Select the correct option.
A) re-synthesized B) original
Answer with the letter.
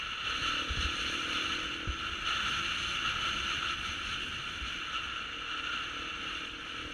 B